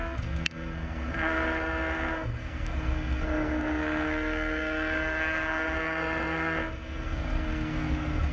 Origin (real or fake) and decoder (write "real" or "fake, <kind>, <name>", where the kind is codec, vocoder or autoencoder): fake, codec, SNAC